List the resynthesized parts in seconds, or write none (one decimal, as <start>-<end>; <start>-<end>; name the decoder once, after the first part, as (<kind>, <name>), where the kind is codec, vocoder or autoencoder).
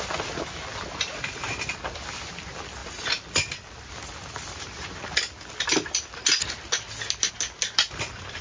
none